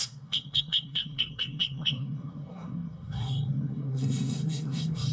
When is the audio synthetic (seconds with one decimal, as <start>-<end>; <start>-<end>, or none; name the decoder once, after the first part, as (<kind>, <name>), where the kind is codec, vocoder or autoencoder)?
0.0-5.1 (codec, SNAC)

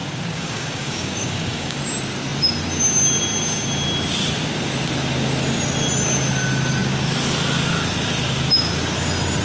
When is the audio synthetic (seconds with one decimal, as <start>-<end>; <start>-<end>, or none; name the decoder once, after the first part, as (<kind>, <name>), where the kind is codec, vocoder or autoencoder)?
0.0-1.8 (codec, DAC)

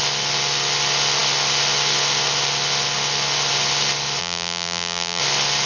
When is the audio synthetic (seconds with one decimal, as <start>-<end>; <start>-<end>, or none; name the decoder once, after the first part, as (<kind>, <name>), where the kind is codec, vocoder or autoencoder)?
4.2-5.2 (vocoder, BigVGAN v2)